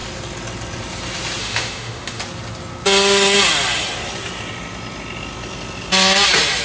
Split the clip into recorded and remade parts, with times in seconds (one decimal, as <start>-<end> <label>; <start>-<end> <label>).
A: 0.0-1.4 recorded; 1.4-2.2 remade; 2.2-6.6 recorded